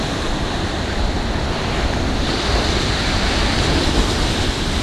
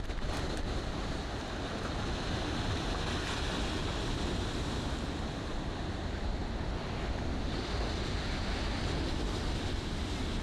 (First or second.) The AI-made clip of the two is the first